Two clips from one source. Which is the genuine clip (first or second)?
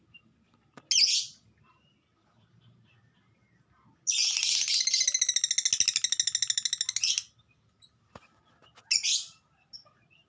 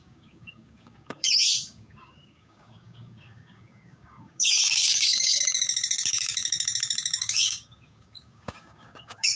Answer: first